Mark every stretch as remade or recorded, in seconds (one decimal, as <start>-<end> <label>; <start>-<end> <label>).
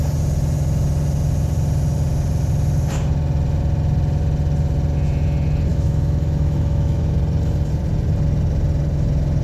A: 0.0-5.7 recorded; 5.7-7.2 remade; 7.2-9.4 recorded